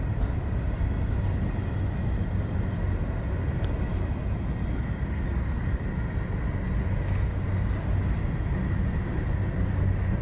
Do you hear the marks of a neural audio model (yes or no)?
no